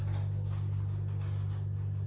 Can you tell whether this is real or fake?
real